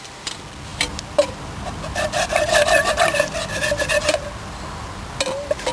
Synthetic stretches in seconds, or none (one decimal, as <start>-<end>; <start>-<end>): none